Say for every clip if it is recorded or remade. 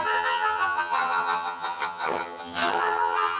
remade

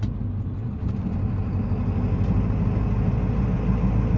recorded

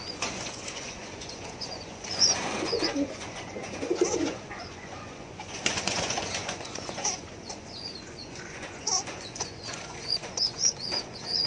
remade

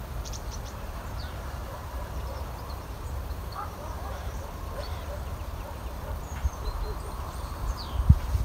remade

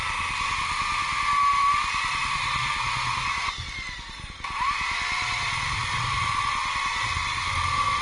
recorded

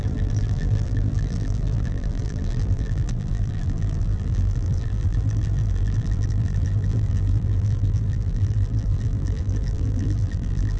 remade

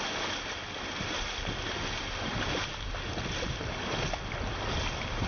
recorded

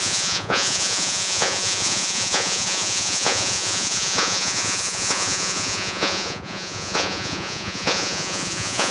remade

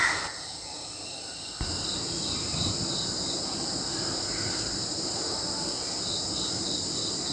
remade